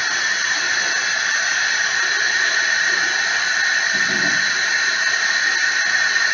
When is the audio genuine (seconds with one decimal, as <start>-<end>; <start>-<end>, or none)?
2.4-6.3